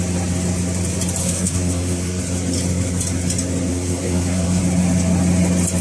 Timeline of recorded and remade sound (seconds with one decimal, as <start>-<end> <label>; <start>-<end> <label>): 0.0-1.2 recorded; 1.2-2.2 remade; 2.2-3.7 recorded; 3.7-4.6 remade; 4.6-5.8 recorded